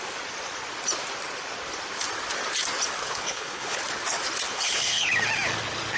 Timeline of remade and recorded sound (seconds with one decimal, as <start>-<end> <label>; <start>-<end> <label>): 0.0-3.0 recorded; 3.0-3.8 remade; 3.8-4.5 recorded; 4.5-5.1 remade; 5.1-6.0 recorded

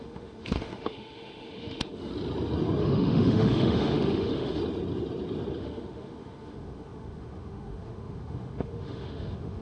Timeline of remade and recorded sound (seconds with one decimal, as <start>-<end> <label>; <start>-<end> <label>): 0.0-2.1 remade; 2.1-2.8 recorded; 2.8-4.6 remade; 4.6-5.6 recorded; 5.6-9.6 remade